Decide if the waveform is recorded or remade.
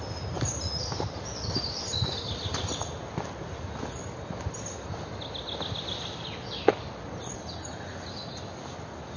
recorded